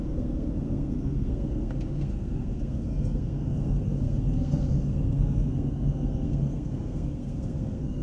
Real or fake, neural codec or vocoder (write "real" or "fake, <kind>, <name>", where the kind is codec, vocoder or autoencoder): fake, codec, SNAC